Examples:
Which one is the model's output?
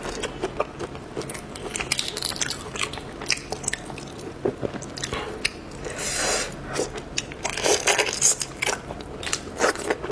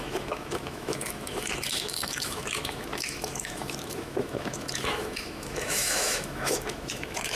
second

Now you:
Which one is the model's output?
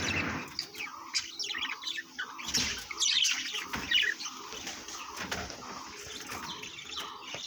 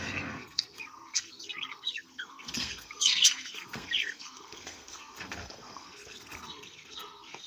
second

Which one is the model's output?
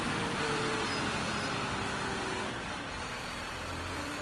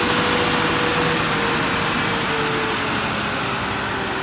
first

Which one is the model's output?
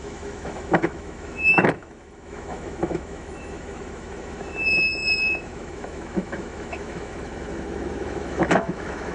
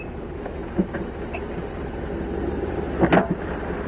first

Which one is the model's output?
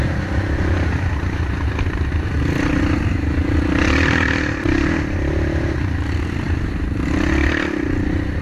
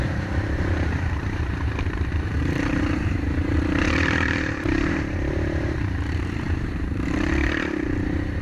second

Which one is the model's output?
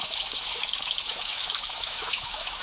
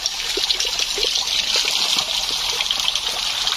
first